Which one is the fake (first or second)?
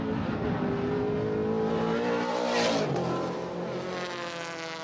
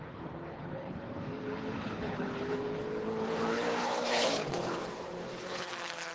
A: second